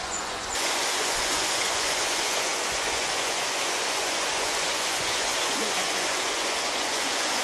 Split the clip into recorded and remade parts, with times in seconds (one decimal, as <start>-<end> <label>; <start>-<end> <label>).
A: 0.0-7.4 remade